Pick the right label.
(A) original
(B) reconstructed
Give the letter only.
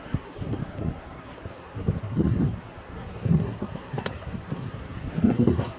B